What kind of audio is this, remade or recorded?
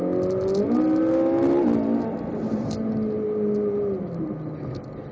recorded